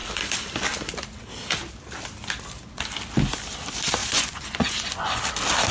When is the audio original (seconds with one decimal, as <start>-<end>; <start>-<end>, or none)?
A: 0.0-4.0; 5.2-5.7